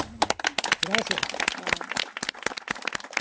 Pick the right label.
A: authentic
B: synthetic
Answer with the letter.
A